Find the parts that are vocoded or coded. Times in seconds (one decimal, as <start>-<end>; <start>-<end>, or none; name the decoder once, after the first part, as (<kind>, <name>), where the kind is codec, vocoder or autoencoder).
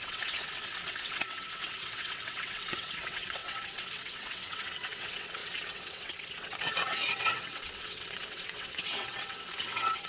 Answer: 0.0-10.1 (vocoder, WaveNeXt)